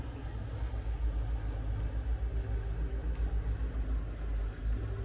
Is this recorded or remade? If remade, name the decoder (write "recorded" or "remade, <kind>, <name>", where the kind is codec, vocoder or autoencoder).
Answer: recorded